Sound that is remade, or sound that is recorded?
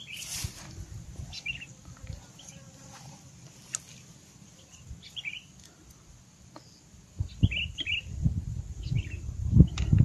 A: recorded